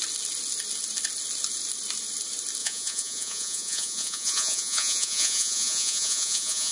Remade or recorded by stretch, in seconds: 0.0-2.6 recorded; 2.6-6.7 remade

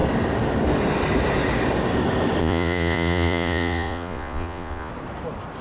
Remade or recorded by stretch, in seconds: 0.0-2.4 recorded; 2.4-4.9 remade; 4.9-5.6 recorded

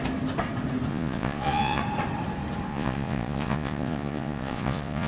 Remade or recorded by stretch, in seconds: 0.0-0.9 recorded; 0.9-1.8 remade; 1.8-2.7 recorded; 2.7-5.1 remade

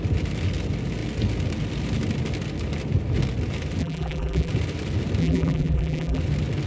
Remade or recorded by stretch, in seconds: 0.0-3.8 recorded; 3.8-4.5 remade; 4.5-5.2 recorded; 5.2-6.2 remade; 6.2-6.7 recorded

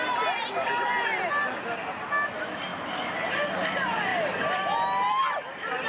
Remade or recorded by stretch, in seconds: 0.0-5.9 recorded